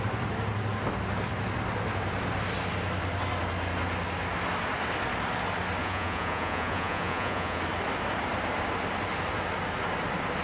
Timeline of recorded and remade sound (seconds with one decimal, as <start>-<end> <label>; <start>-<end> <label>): 0.0-5.8 recorded; 5.8-7.6 remade; 7.6-10.4 recorded